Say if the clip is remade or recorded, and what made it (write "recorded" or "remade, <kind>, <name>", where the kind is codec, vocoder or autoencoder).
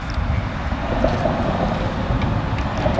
recorded